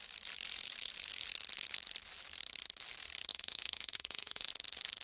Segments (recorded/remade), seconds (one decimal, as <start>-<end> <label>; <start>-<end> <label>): 0.0-3.3 recorded; 3.3-4.5 remade; 4.5-5.0 recorded